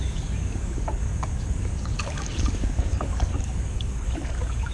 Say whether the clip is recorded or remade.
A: remade